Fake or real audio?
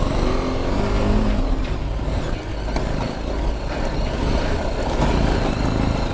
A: real